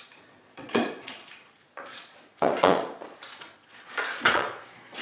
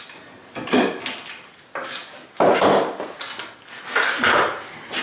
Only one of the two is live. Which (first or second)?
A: second